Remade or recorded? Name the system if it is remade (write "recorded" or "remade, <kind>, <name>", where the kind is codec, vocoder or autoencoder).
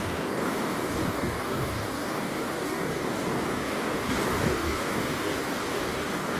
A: remade, codec, DAC